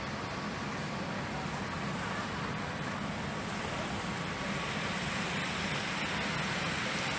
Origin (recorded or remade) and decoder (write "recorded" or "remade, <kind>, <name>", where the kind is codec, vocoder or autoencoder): recorded